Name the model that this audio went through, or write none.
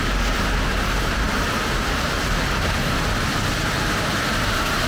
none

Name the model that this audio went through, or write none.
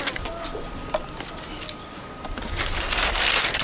none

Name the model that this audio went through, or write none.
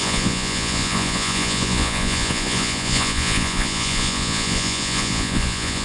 vocoder, Vocos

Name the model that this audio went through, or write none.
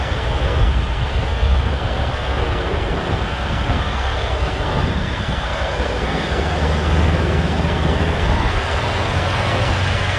codec, SNAC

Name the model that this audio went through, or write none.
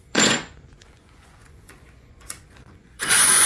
vocoder, Vocos